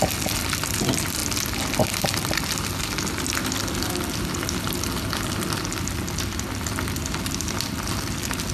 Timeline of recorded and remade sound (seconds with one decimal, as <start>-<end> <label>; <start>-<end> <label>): 0.0-8.5 recorded